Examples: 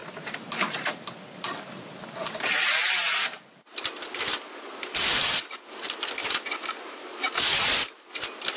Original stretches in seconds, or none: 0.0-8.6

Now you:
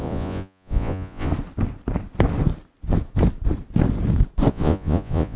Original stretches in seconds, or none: 1.3-4.5

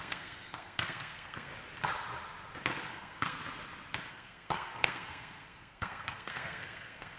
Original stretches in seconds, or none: 1.5-2.9; 3.4-4.1

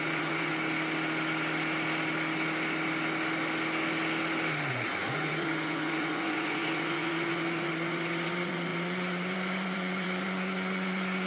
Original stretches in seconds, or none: 0.5-4.7

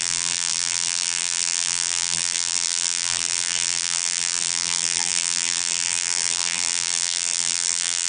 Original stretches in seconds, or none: none

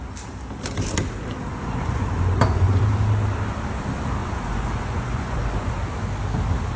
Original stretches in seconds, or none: 0.0-1.5; 2.8-4.2; 5.7-6.8

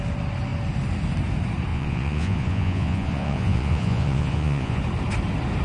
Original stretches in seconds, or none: 0.0-1.7; 4.8-5.6